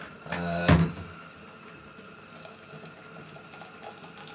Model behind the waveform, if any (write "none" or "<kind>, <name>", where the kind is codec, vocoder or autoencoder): none